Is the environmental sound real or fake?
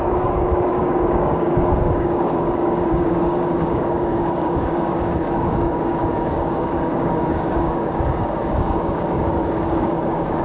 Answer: fake